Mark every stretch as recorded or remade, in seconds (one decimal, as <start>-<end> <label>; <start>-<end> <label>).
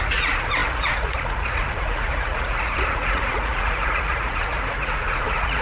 0.0-5.6 remade